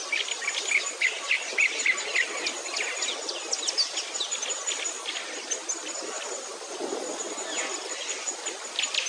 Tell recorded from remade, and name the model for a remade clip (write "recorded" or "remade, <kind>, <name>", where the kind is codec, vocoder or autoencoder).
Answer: recorded